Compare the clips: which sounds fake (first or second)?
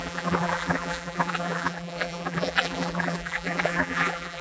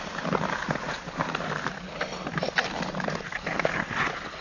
first